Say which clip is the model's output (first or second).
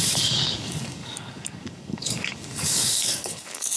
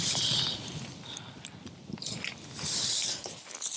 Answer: first